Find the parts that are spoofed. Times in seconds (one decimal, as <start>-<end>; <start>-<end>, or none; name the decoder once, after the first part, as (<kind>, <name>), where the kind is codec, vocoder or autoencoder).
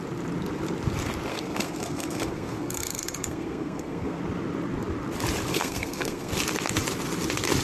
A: 1.3-4.2 (codec, SNAC); 5.5-6.3